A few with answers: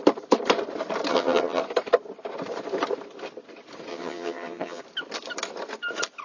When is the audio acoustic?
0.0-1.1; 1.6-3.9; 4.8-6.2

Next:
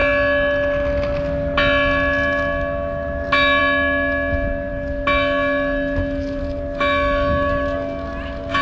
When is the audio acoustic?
0.0-8.6

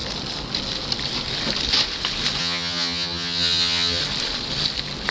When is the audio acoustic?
0.0-2.4; 4.0-5.1